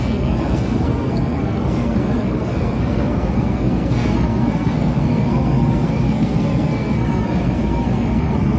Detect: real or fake fake